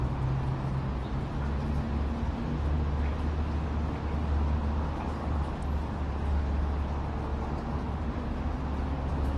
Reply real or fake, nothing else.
real